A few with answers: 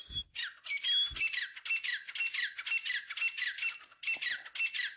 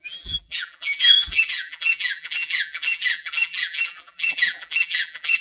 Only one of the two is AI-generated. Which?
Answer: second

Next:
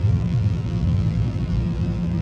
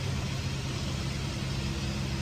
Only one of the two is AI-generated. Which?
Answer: first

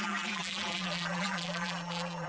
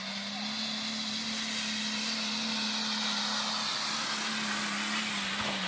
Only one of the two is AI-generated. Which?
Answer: first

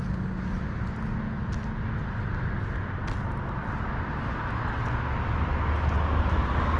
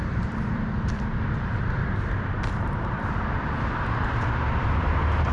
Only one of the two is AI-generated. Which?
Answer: second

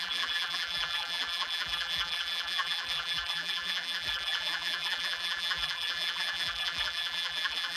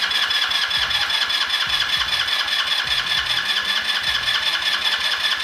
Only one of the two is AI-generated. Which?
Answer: first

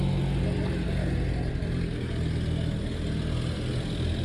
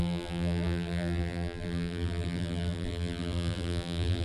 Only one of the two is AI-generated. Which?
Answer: second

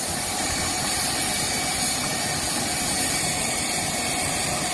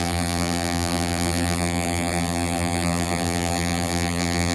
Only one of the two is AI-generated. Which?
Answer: second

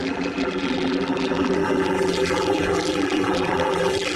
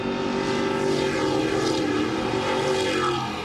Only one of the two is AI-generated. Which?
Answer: first